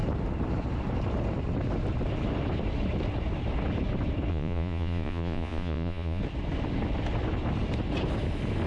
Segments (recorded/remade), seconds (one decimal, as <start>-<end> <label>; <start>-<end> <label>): 0.0-4.3 recorded; 4.3-6.2 remade; 6.2-8.7 recorded